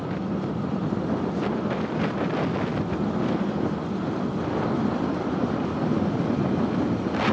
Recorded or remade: recorded